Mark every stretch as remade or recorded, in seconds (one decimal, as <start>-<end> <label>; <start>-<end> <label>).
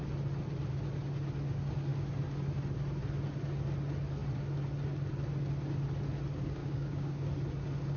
0.0-6.6 recorded; 6.6-7.3 remade; 7.3-8.0 recorded